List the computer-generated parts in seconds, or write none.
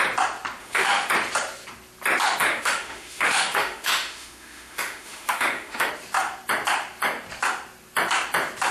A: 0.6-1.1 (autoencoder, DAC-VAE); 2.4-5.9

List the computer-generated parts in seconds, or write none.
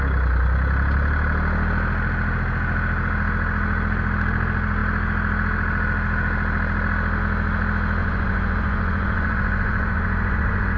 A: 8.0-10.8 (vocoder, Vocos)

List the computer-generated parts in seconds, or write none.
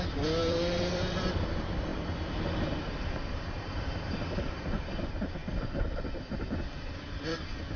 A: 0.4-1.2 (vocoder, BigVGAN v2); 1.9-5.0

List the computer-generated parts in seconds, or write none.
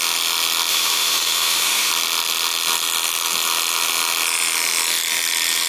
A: 0.7-1.9 (autoencoder, DAC-VAE)